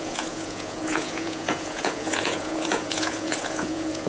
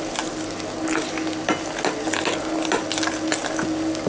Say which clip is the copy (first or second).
first